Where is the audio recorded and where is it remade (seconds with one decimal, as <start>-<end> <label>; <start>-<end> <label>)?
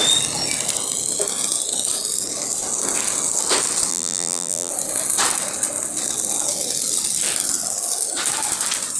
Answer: 0.0-3.9 recorded; 3.9-4.7 remade; 4.7-9.0 recorded